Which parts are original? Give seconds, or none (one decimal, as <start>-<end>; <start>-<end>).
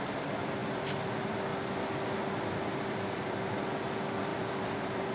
0.0-4.3